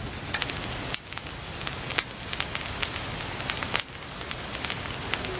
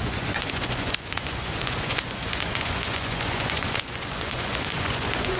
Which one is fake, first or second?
second